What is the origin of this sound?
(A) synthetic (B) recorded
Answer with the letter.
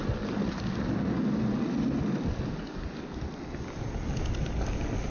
B